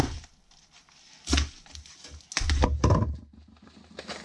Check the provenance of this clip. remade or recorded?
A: recorded